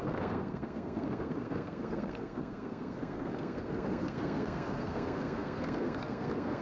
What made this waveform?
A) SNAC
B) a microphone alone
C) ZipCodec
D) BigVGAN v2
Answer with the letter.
A